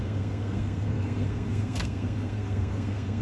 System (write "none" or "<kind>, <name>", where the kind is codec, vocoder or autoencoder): codec, SNAC